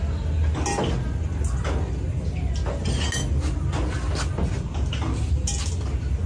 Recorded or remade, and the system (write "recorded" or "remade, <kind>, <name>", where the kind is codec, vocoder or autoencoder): recorded